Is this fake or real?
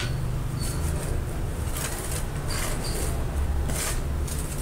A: real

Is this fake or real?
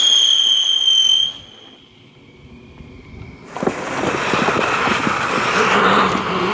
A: real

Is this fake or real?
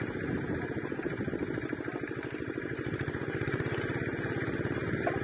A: fake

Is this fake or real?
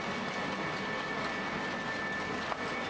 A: real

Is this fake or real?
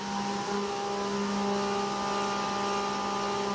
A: real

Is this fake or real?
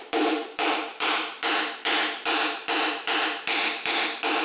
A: fake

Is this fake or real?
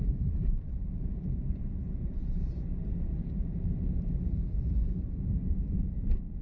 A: fake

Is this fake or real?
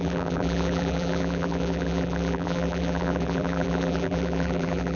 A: fake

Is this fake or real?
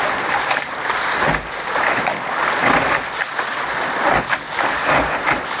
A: real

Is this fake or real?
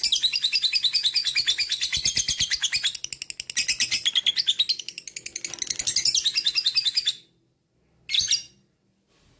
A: real